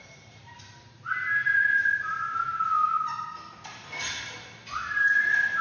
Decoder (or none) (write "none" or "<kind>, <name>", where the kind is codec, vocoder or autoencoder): none